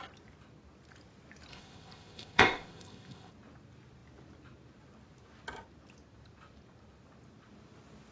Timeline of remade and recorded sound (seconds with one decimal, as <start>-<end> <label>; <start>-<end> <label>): 0.0-1.5 recorded; 1.5-3.3 remade; 3.3-8.1 recorded